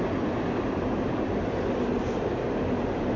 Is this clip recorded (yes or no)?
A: yes